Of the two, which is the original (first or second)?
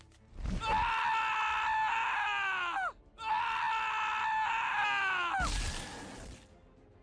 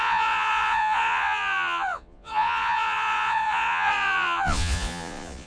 first